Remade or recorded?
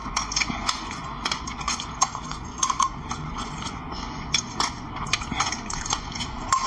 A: remade